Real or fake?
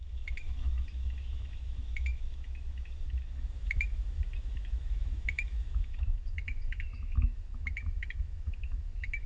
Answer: fake